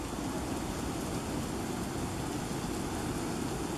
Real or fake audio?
real